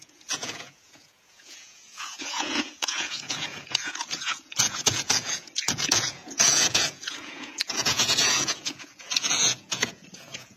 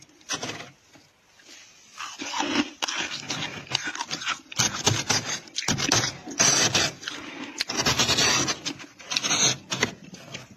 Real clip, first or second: second